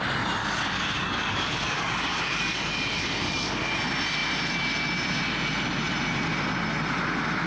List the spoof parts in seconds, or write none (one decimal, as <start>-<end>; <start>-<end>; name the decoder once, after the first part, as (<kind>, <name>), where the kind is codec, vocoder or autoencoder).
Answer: 0.4-3.7 (codec, DAC)